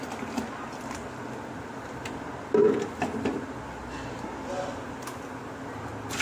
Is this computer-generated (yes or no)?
no